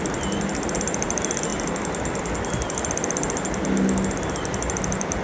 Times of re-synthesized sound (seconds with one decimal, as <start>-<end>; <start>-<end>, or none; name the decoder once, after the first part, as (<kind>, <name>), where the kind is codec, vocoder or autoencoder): none